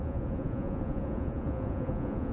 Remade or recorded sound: remade